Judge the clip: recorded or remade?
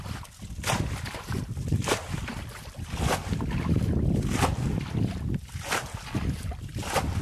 recorded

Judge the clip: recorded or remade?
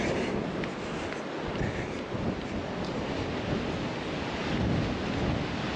recorded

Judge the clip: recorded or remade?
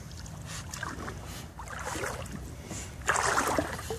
recorded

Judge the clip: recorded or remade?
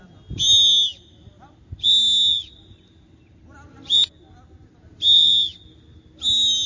recorded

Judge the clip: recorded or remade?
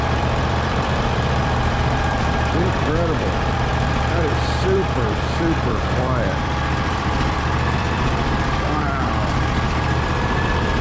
remade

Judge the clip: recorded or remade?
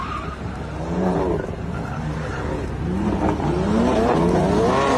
recorded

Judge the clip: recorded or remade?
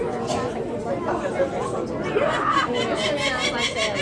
recorded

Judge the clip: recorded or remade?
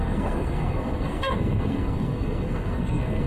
remade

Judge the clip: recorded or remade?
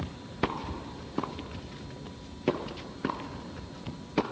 recorded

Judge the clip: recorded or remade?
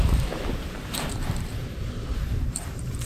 remade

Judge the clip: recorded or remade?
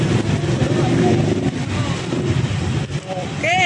recorded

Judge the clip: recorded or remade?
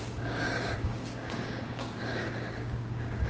remade